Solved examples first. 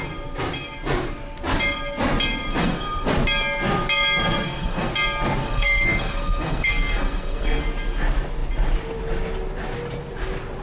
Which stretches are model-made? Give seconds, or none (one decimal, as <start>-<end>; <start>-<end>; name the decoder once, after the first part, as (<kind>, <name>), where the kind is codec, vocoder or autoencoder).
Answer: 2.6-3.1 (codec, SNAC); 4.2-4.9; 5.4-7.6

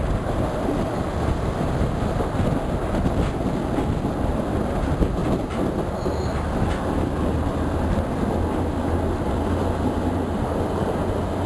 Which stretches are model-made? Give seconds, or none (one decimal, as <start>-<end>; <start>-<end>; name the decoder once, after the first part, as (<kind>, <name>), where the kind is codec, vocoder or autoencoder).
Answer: none

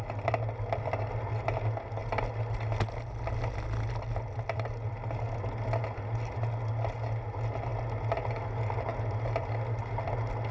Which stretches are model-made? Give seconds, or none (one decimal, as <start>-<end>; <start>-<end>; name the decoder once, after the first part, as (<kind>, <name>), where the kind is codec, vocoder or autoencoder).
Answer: none

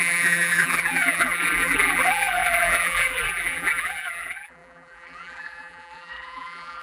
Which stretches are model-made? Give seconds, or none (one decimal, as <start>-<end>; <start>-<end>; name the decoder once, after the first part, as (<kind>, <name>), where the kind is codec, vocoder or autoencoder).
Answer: 0.0-6.8 (vocoder, BigVGAN v2)